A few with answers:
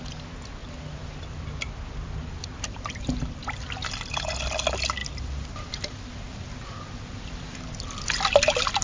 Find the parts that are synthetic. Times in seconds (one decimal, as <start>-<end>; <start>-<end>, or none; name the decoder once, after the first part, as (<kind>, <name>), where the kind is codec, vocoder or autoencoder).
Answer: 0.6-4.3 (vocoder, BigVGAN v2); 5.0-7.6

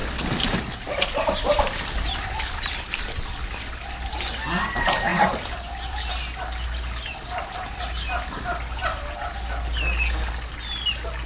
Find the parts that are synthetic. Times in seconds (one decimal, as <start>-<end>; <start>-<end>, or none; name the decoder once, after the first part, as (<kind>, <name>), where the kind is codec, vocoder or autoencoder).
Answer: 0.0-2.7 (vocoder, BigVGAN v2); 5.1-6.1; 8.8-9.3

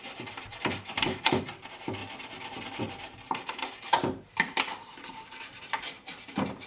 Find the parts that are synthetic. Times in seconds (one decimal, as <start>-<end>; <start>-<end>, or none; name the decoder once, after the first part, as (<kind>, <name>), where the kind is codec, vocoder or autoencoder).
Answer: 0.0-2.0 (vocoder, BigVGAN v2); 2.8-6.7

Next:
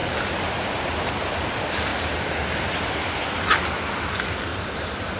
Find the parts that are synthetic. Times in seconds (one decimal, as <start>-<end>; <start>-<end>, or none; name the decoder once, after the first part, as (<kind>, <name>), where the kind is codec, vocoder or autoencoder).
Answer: 0.0-0.8 (vocoder, BigVGAN v2); 1.9-2.5; 4.5-5.2

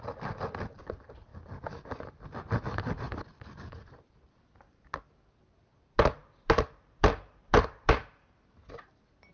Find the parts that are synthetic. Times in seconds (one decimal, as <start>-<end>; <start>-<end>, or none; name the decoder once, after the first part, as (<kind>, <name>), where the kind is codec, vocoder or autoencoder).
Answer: 6.2-8.8 (vocoder, BigVGAN v2)

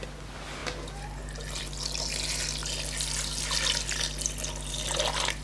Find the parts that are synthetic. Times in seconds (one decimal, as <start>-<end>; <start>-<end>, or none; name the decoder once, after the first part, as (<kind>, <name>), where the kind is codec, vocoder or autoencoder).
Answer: none

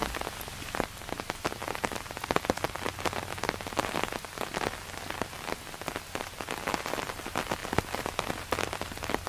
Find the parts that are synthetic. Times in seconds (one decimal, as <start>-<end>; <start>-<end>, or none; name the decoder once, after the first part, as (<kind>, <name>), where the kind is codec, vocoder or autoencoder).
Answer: 0.8-1.6 (vocoder, BigVGAN v2); 6.8-7.6; 8.3-9.3